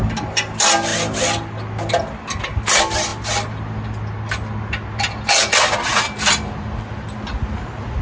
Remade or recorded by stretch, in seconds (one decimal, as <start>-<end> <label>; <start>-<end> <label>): 0.0-8.0 recorded